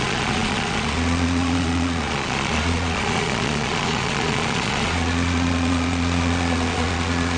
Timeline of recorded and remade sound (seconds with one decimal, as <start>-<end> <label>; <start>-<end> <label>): 0.0-7.4 remade